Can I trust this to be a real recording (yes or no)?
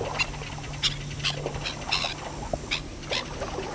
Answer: yes